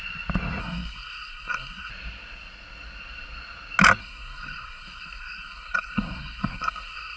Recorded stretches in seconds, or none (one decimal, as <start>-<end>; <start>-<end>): 0.0-0.6; 1.9-4.0